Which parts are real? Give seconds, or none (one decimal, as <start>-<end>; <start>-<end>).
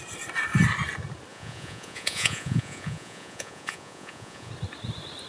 0.0-1.3; 4.5-5.3